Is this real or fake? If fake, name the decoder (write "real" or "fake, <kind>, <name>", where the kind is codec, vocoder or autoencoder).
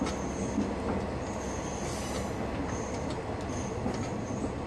real